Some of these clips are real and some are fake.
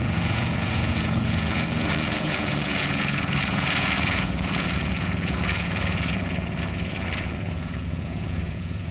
fake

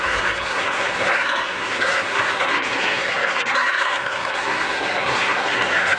fake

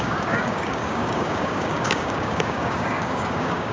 fake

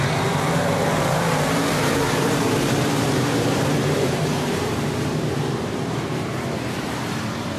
fake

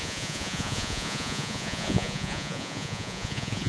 fake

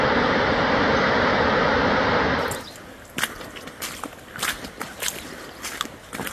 real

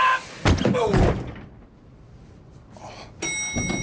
real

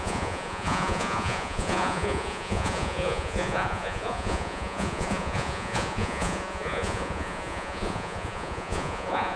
fake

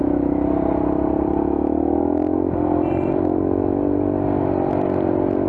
real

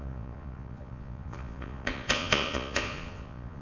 fake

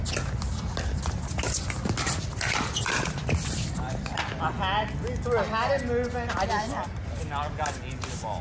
real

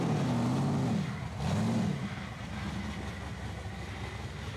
real